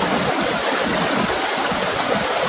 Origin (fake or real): real